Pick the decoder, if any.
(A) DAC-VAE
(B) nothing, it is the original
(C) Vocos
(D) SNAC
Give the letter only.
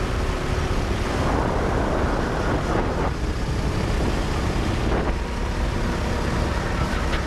B